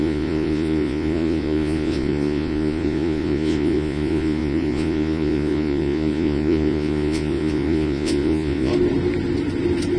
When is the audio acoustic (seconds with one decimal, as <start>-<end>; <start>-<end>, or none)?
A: 8.7-10.0